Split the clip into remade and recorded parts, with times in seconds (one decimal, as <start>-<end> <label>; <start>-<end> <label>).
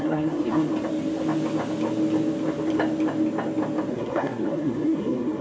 0.0-0.7 remade; 0.7-3.9 recorded; 3.9-5.4 remade